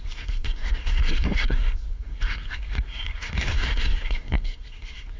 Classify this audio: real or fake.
fake